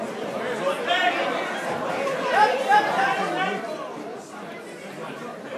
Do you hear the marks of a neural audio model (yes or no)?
no